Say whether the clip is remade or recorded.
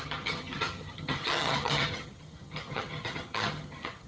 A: remade